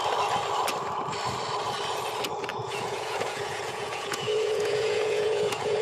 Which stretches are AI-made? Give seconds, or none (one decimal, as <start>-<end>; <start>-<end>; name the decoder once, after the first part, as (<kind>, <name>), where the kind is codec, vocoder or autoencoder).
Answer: 2.5-5.8 (vocoder, Vocos)